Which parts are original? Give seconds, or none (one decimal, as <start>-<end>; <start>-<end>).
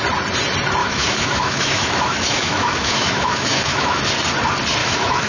0.0-0.8; 4.0-4.8